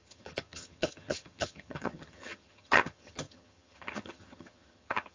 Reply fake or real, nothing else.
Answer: fake